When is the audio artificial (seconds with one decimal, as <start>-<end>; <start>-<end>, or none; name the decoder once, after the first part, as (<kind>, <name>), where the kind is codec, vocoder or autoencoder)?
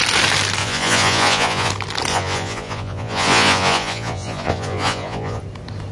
0.6-1.7 (vocoder, Vocos); 2.1-5.4